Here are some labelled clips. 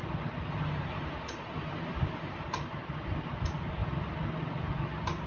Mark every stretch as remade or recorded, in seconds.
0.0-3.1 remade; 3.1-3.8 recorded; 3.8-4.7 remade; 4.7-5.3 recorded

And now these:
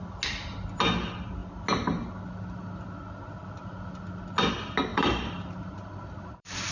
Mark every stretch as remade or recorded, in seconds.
0.0-4.9 recorded; 4.9-6.7 remade

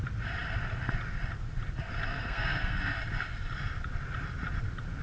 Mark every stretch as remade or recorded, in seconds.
0.0-2.1 recorded; 2.1-3.0 remade; 3.0-5.0 recorded

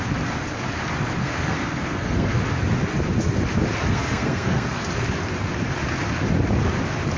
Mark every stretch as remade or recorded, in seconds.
0.0-1.2 recorded; 1.2-2.4 remade; 2.4-3.8 recorded; 3.8-4.9 remade; 4.9-7.2 recorded

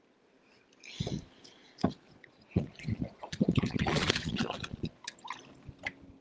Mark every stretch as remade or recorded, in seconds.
0.0-1.6 recorded; 1.6-5.0 remade; 5.0-6.2 recorded

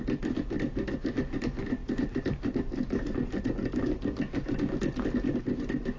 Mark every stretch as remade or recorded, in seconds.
0.0-6.0 recorded

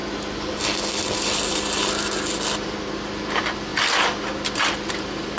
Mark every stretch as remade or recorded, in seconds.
0.0-5.4 recorded

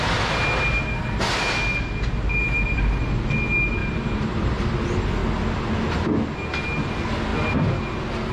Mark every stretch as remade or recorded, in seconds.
0.0-2.4 recorded; 2.4-3.0 remade; 3.0-3.8 recorded; 3.8-4.7 remade; 4.7-8.3 recorded